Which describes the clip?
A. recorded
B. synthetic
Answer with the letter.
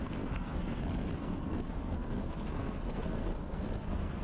B